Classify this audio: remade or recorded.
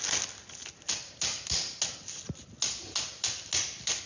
recorded